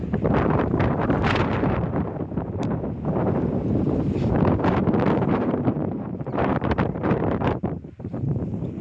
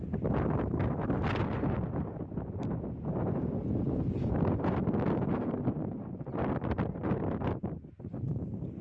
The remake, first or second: first